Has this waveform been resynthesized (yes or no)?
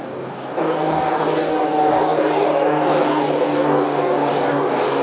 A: yes